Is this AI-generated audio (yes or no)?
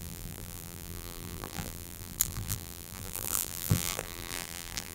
yes